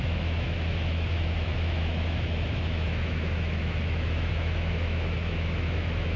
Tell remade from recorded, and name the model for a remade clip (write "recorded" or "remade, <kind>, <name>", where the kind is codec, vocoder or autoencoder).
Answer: remade, autoencoder, DAC-VAE